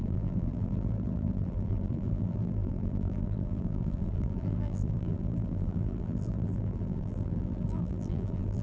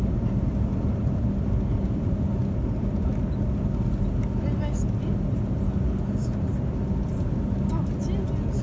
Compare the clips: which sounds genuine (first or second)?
second